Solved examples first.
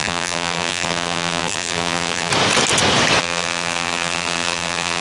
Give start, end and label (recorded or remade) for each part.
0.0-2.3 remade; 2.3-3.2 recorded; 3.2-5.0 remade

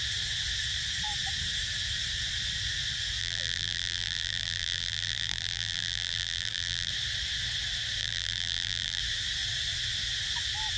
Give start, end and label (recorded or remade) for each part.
0.0-3.2 recorded; 3.2-6.9 remade; 6.9-8.0 recorded; 8.0-9.0 remade; 9.0-10.8 recorded

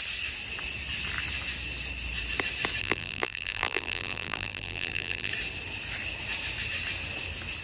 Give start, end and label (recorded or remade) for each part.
0.0-2.8 recorded; 2.8-5.3 remade; 5.3-7.6 recorded

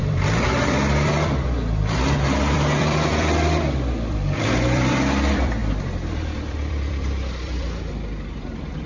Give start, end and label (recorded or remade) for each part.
0.0-8.9 remade

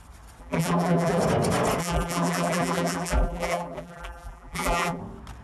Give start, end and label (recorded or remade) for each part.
0.0-0.4 recorded; 0.4-1.2 remade; 1.2-1.8 recorded; 1.8-5.0 remade; 5.0-5.4 recorded